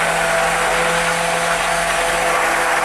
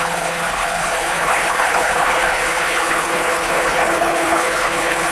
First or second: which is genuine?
first